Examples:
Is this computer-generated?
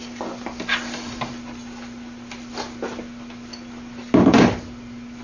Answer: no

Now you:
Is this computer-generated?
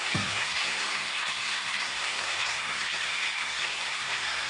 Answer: yes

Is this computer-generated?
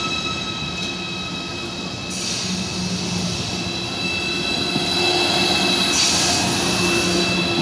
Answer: no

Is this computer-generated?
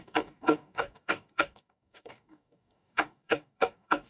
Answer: yes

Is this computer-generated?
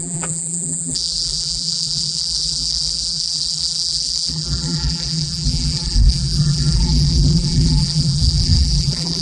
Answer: yes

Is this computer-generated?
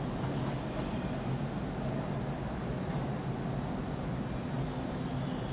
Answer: no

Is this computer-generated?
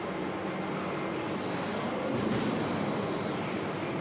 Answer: no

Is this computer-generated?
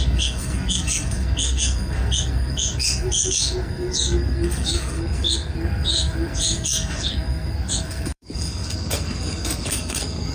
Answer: yes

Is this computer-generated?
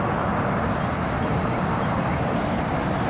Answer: no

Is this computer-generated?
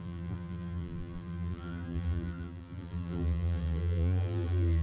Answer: yes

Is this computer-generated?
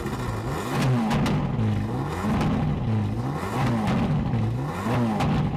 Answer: no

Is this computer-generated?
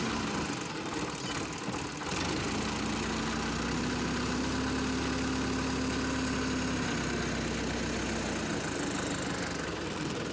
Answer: no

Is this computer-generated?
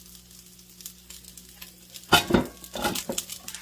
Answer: no